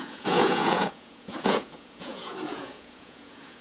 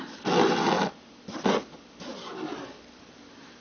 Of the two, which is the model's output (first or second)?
first